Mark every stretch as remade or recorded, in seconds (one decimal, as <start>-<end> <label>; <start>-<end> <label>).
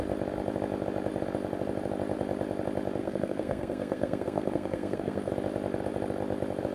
0.0-3.0 recorded; 3.0-5.3 remade; 5.3-6.7 recorded